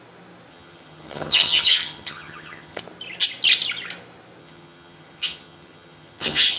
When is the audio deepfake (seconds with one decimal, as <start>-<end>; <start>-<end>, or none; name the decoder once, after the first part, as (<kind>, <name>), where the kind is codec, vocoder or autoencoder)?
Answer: 0.5-2.8 (vocoder, HiFi-GAN); 4.4-6.6